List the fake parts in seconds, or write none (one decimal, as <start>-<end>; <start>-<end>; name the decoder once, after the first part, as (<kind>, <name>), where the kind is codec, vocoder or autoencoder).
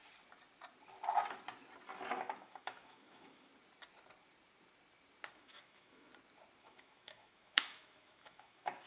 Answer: 2.1-3.5 (autoencoder, DAC-VAE); 5.3-6.1; 6.6-8.9